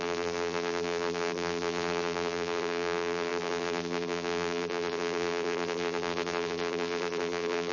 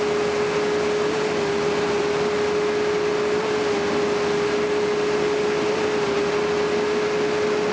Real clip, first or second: second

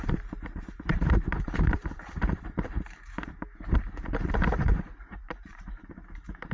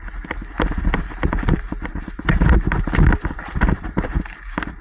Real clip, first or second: second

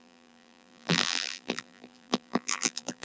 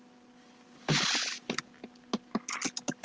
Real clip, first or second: second